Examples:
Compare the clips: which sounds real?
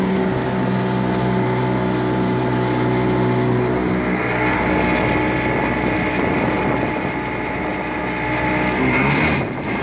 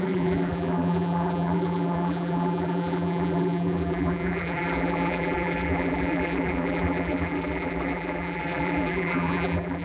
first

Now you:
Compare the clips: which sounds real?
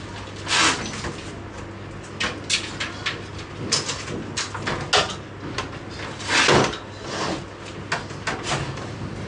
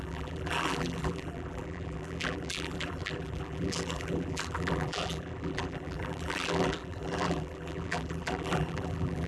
first